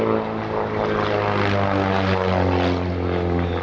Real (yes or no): yes